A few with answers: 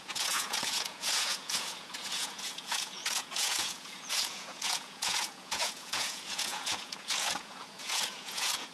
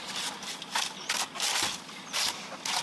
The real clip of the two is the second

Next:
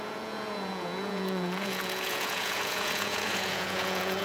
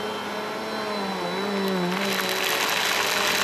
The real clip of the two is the second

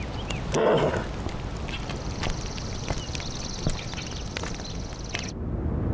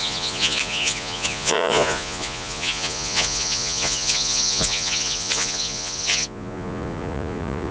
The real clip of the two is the first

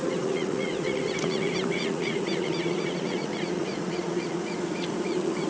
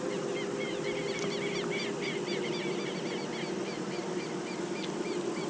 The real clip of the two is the second